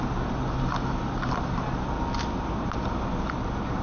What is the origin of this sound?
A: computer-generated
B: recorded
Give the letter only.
B